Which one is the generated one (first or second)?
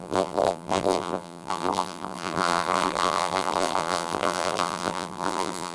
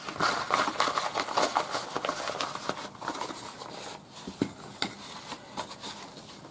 first